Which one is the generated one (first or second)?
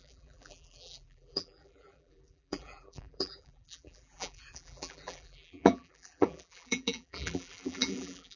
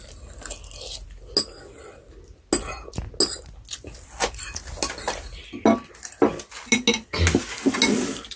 first